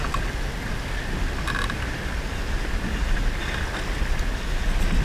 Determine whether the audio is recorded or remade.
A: recorded